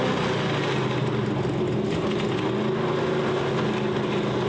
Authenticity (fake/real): real